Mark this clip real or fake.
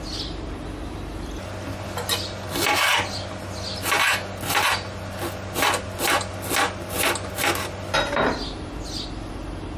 real